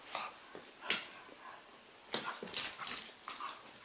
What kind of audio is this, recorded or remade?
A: recorded